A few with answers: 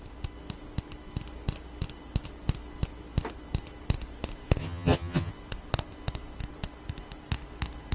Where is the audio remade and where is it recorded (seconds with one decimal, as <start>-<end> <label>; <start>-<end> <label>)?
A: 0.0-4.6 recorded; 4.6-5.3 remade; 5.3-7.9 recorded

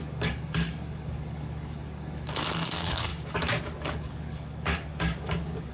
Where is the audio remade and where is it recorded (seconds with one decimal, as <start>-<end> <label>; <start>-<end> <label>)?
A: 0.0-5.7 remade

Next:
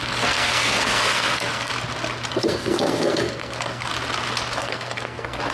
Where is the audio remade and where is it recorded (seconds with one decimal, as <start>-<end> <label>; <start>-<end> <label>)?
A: 0.0-1.7 remade; 1.7-2.3 recorded; 2.3-3.9 remade; 3.9-4.6 recorded; 4.6-5.5 remade

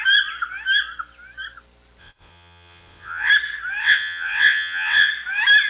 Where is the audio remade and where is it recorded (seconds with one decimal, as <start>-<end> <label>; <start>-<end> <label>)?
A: 0.0-2.0 recorded; 2.0-3.3 remade; 3.3-3.8 recorded; 3.8-5.1 remade; 5.1-5.7 recorded